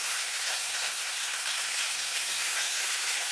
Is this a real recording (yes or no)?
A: no